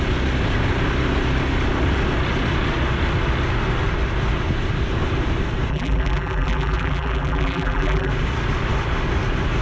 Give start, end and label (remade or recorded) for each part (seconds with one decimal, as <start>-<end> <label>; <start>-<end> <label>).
0.0-5.7 recorded; 5.7-8.1 remade; 8.1-9.6 recorded